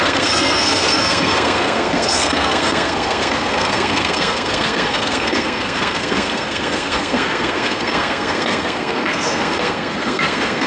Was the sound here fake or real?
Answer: fake